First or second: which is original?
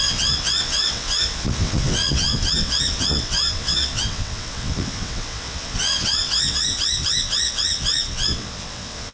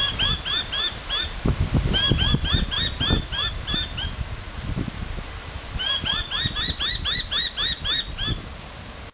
second